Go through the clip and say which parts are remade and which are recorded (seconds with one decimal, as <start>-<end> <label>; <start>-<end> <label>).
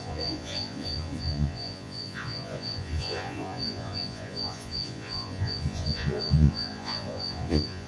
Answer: 0.0-7.9 remade